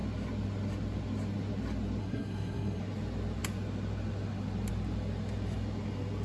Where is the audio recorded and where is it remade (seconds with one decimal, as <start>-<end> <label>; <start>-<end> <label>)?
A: 0.0-2.0 recorded; 2.0-2.8 remade; 2.8-6.2 recorded